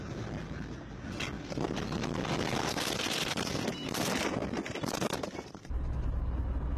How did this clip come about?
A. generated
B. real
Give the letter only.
B